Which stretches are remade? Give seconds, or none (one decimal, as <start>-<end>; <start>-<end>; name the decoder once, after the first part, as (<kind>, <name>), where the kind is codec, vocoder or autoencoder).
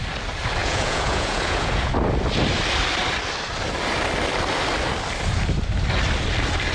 0.6-1.9 (vocoder, Vocos)